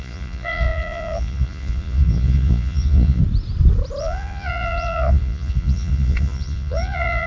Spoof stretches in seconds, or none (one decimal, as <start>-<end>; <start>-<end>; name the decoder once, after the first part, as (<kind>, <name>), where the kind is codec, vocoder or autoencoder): 0.0-3.2 (vocoder, Vocos); 4.0-7.3